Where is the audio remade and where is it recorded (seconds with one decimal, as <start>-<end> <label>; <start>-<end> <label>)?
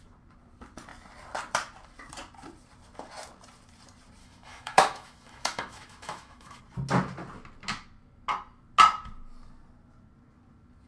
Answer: 0.0-4.2 recorded; 4.2-6.6 remade; 6.6-10.9 recorded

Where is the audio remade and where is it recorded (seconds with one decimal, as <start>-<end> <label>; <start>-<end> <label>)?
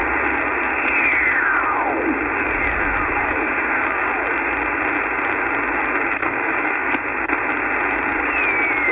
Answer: 0.0-3.2 recorded; 3.2-4.1 remade; 4.1-6.2 recorded; 6.2-6.9 remade; 6.9-8.9 recorded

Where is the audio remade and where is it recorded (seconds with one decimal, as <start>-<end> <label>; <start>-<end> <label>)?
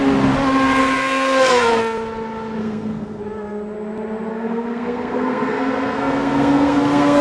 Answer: 0.0-0.8 recorded; 0.8-1.8 remade; 1.8-2.6 recorded; 2.6-3.2 remade; 3.2-4.3 recorded; 4.3-7.2 remade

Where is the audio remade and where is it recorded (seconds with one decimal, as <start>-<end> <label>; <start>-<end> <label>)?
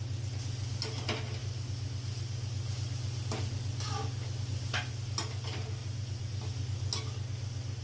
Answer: 0.0-7.8 recorded